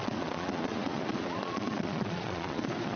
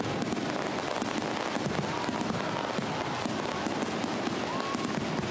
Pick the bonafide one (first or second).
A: second